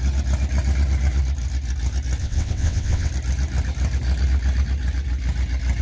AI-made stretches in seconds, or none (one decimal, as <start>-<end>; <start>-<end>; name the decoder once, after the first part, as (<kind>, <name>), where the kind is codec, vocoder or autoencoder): 2.2-3.1 (vocoder, WaveNeXt)

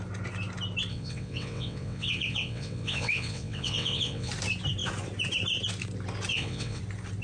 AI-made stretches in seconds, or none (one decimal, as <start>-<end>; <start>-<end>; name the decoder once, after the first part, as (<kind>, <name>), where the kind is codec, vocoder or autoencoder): 0.9-4.3 (vocoder, WaveNeXt); 6.3-6.8